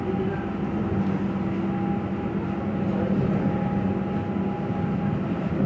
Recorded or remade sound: recorded